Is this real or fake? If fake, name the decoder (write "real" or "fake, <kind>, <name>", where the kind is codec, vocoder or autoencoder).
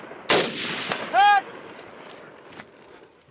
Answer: real